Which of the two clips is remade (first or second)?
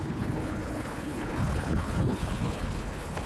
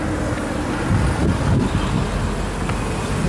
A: first